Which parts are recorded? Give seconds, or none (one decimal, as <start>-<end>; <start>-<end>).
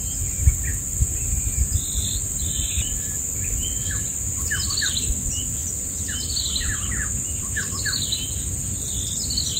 0.0-9.6